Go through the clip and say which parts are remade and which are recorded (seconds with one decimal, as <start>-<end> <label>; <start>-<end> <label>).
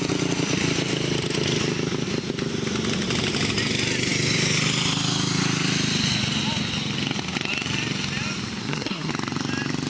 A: 0.0-8.6 recorded; 8.6-9.1 remade; 9.1-9.9 recorded